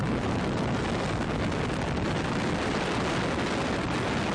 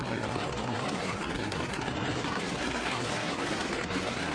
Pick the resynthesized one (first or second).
second